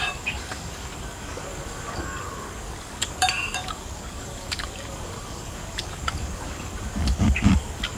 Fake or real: fake